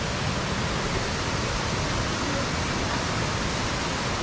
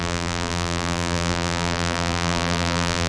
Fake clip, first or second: second